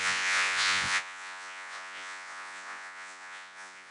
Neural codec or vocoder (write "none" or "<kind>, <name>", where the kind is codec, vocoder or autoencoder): vocoder, Vocos